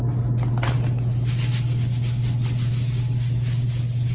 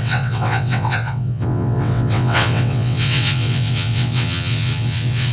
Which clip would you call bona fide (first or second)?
first